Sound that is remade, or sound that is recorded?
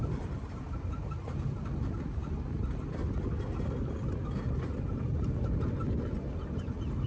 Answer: recorded